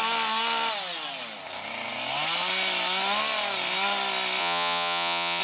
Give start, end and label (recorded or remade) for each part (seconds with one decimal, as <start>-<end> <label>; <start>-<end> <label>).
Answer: 0.0-4.4 recorded; 4.4-5.4 remade